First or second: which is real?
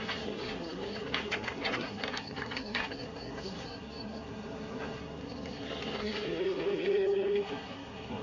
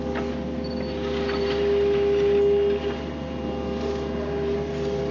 second